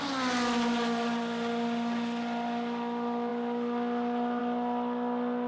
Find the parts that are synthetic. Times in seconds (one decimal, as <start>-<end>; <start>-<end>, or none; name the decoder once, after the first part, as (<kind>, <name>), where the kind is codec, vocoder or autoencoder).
none